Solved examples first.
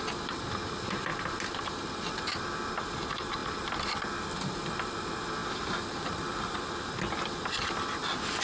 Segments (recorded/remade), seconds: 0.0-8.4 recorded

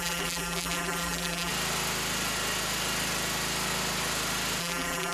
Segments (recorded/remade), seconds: 0.0-1.5 remade; 1.5-4.6 recorded; 4.6-5.1 remade

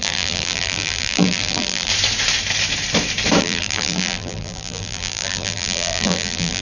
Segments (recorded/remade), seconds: 0.0-1.9 remade; 1.9-3.4 recorded; 3.4-6.6 remade

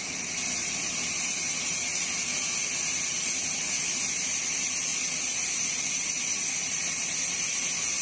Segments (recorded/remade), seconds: 0.0-8.0 recorded

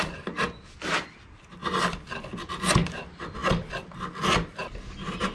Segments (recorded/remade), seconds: 0.0-5.3 recorded

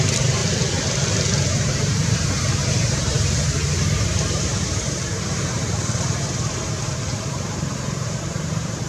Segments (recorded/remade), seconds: 0.0-0.4 remade; 0.4-1.5 recorded; 1.5-8.9 remade

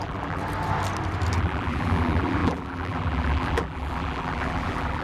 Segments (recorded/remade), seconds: 0.0-0.4 remade; 0.4-1.4 recorded; 1.4-5.0 remade

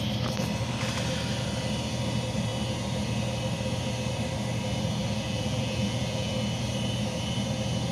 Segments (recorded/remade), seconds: 0.0-5.0 recorded; 5.0-6.3 remade; 6.3-7.9 recorded